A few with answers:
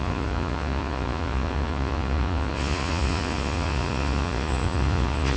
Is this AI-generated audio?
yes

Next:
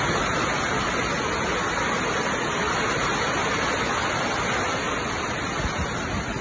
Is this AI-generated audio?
no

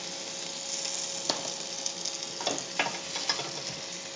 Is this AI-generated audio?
no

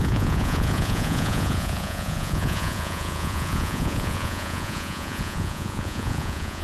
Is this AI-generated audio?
yes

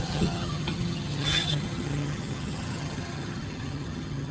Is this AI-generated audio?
yes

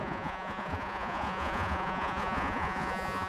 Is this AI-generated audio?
yes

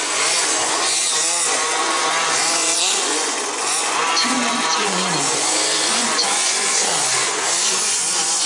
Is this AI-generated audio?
yes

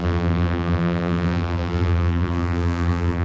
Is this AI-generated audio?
yes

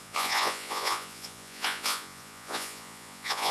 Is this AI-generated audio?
yes